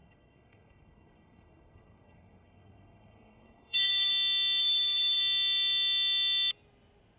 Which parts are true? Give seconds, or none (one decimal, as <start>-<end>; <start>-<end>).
4.1-4.6; 5.2-7.2